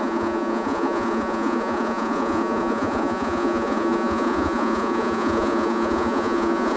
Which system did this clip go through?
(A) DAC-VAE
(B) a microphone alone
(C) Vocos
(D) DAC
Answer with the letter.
C